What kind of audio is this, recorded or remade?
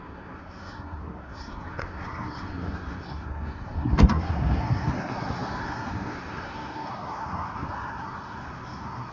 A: remade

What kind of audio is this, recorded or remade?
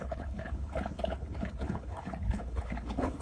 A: remade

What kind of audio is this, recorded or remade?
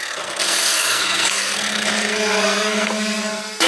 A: remade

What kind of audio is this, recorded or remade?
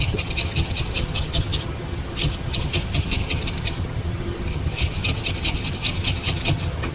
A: remade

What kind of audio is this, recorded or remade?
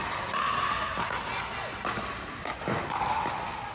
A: recorded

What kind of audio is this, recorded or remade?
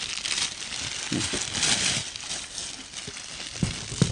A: recorded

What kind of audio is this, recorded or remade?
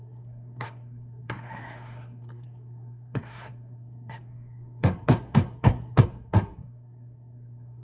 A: remade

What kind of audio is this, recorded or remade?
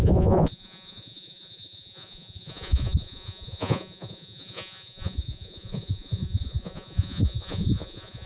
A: remade